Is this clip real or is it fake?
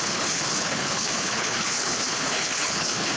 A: fake